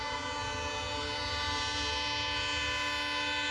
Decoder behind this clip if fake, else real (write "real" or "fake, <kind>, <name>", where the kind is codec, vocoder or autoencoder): real